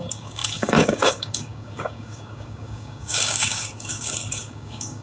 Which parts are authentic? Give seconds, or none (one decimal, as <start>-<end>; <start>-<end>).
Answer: none